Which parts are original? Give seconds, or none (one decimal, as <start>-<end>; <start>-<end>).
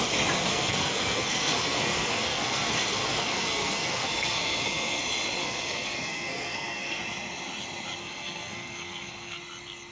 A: 0.0-0.5; 5.0-5.4; 7.0-8.0; 9.4-9.9